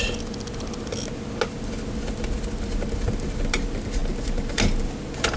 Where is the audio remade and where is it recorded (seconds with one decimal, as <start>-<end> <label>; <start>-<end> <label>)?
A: 0.0-5.4 recorded